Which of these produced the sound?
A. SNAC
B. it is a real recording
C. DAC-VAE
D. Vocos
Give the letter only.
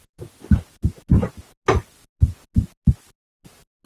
B